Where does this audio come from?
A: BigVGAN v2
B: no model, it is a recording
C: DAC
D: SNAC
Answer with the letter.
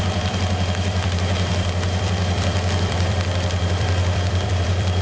A